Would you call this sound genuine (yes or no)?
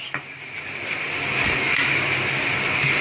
yes